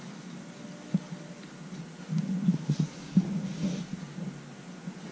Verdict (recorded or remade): recorded